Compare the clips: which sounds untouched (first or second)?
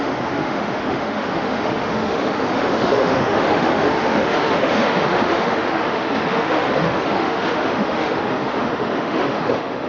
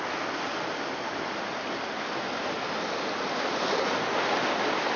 second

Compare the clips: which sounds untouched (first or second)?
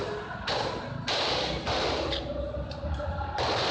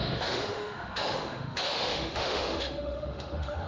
first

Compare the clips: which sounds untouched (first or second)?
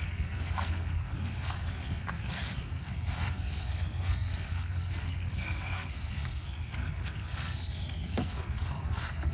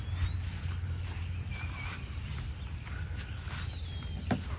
second